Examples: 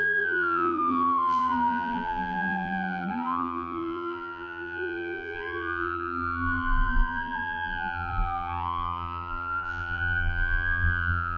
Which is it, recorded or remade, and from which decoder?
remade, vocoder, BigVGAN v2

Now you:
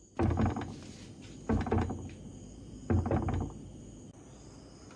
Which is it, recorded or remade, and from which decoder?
recorded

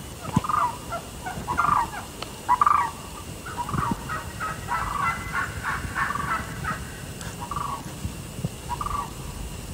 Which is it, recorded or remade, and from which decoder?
recorded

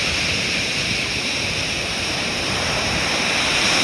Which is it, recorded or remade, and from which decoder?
remade, vocoder, BigVGAN v2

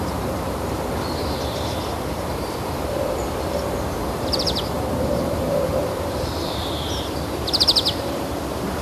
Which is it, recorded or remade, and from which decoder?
remade, vocoder, BigVGAN v2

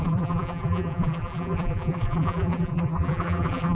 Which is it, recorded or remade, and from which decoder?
remade, vocoder, BigVGAN v2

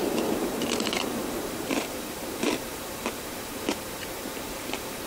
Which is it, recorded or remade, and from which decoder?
remade, vocoder, BigVGAN v2